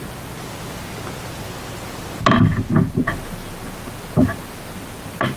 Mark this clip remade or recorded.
recorded